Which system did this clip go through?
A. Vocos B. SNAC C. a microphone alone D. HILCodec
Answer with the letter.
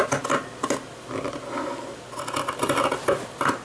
C